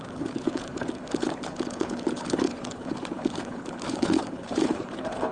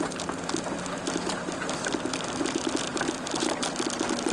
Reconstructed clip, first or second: first